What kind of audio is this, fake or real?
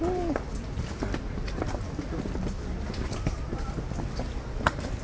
real